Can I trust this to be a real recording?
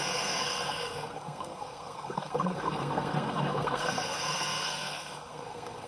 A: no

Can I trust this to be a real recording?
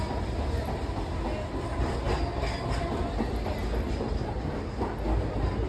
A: yes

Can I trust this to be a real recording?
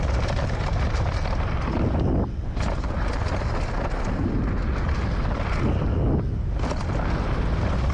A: yes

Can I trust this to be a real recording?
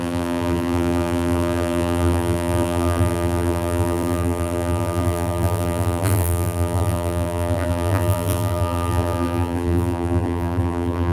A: no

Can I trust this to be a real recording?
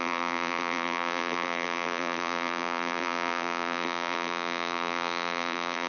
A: no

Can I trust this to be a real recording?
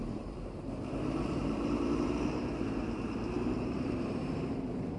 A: no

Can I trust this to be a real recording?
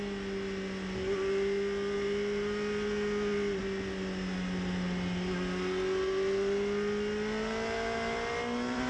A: yes